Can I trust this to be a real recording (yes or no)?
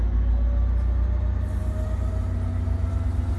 yes